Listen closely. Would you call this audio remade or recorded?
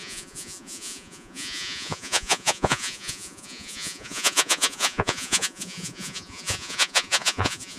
remade